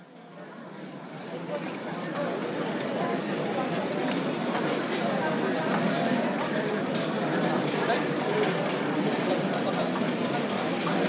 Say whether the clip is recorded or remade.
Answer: recorded